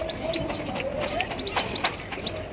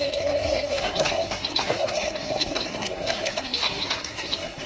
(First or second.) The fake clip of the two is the second